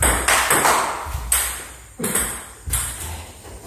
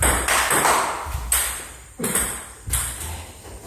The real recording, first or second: first